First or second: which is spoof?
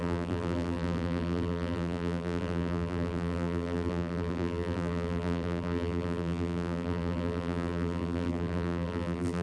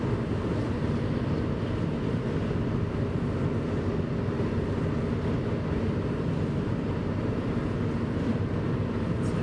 first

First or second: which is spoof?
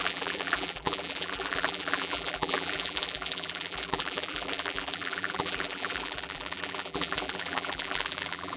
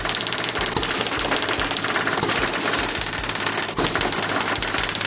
first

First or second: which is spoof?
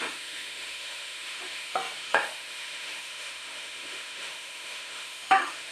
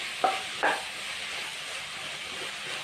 first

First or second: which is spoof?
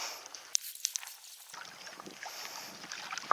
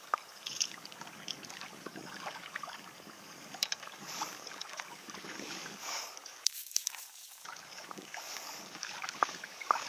second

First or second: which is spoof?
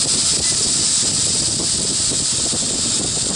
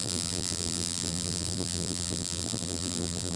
second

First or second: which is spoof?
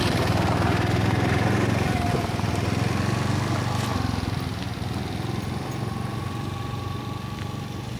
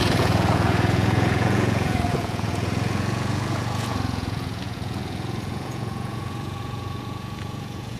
second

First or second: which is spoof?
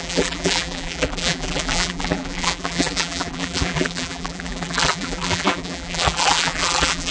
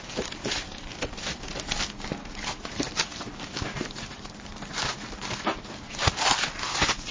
first